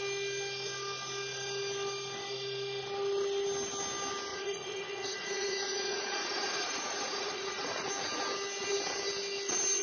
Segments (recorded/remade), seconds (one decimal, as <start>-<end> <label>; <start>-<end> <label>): 0.0-4.3 recorded; 4.3-7.9 remade; 7.9-9.8 recorded